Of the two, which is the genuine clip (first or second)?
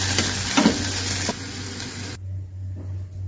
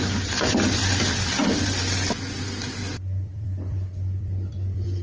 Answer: first